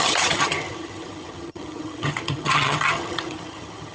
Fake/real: fake